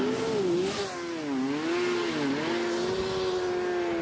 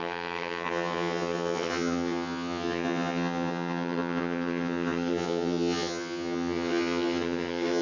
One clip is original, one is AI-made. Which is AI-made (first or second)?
second